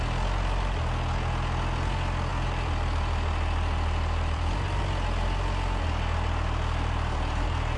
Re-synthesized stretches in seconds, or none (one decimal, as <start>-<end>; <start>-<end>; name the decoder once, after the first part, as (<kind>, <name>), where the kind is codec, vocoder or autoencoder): 2.3-4.8 (vocoder, BigVGAN v2)